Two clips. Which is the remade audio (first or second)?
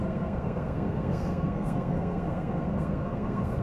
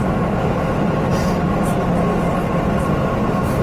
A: first